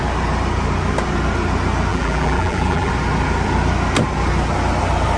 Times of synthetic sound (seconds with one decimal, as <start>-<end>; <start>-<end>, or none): 1.9-2.9